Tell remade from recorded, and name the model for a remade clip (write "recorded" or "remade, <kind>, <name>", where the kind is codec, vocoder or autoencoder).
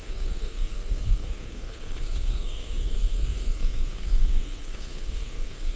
remade, codec, SNAC